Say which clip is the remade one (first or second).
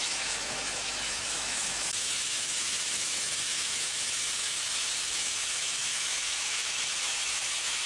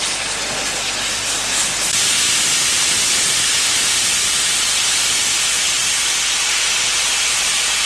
first